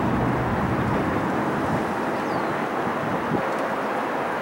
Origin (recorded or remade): recorded